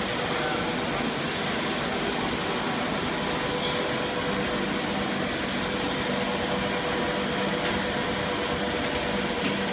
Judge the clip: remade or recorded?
recorded